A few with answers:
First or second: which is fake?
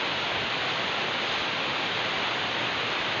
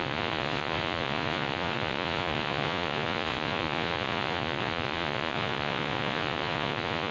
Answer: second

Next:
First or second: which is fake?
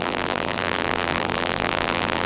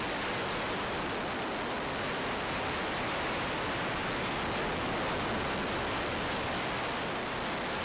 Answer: first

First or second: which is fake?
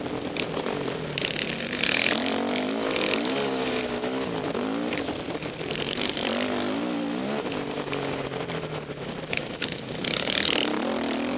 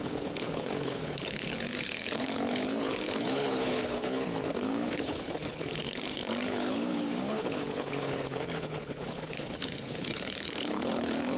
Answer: second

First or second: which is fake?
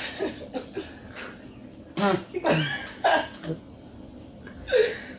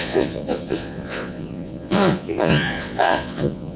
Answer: second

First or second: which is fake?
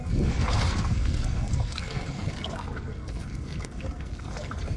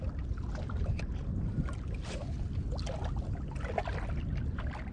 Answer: first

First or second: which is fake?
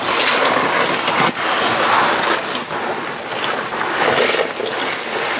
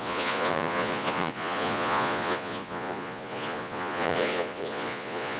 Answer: second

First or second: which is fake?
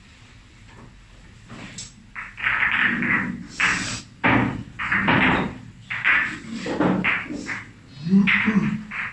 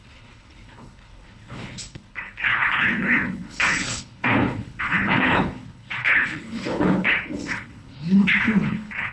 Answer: second